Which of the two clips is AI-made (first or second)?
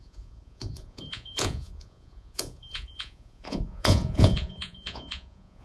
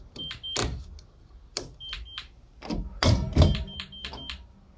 first